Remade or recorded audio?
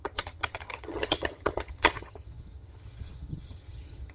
remade